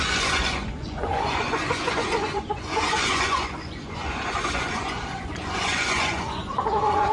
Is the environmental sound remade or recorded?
remade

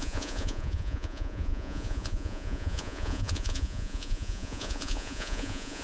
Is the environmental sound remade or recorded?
remade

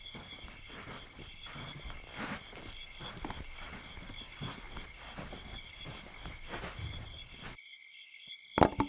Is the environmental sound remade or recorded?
recorded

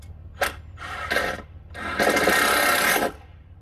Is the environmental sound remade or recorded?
recorded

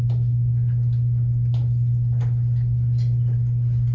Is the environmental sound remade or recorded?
recorded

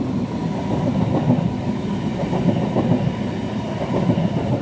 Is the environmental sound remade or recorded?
recorded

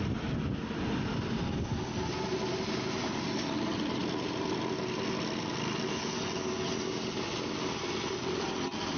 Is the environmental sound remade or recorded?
recorded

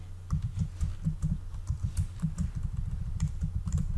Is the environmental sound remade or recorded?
recorded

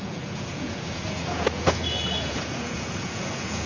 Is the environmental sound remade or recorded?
remade